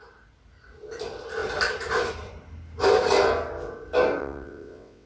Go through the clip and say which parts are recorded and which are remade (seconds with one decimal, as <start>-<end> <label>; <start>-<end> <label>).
0.0-4.2 recorded; 4.2-5.1 remade